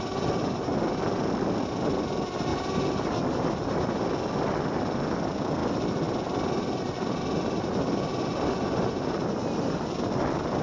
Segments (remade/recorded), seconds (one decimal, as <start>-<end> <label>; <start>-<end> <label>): 0.0-10.6 recorded